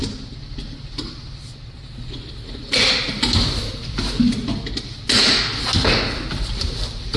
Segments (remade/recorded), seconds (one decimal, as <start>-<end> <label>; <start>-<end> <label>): 0.0-7.2 recorded